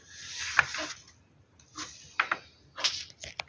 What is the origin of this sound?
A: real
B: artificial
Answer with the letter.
A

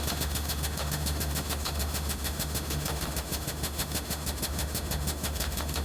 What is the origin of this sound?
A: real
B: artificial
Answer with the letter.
B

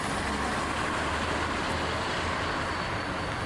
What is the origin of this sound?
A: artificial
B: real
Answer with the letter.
B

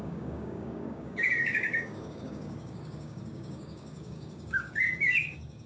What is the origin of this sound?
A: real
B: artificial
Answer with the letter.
B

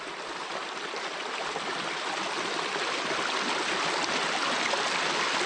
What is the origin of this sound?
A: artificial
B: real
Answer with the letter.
B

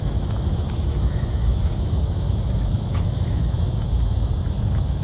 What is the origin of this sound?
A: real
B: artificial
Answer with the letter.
B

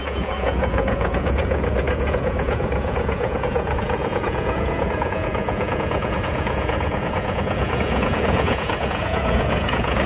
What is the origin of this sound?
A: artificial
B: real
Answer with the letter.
A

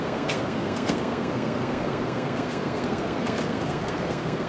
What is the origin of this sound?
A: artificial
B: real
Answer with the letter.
A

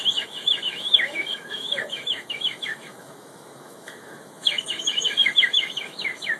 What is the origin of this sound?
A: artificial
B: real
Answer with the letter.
A